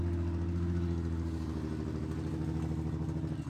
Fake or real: real